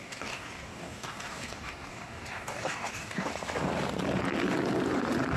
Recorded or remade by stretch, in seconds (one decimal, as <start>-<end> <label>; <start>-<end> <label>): 0.0-3.3 remade; 3.3-5.4 recorded